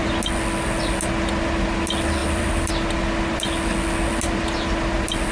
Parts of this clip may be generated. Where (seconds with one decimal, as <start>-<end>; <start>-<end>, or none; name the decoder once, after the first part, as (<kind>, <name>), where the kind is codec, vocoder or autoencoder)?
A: 2.2-2.7 (vocoder, BigVGAN v2)